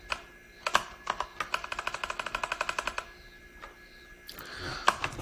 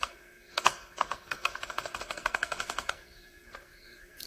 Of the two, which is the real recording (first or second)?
first